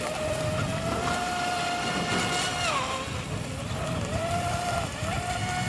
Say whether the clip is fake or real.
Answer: real